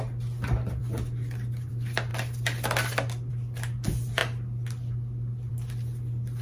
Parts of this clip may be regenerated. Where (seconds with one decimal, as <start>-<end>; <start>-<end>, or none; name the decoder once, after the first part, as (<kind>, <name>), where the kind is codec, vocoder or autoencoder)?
none